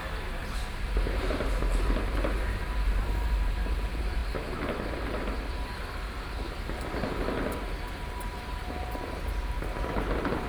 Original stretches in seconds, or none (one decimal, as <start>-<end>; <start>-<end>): 0.4-1.2; 4.2-7.9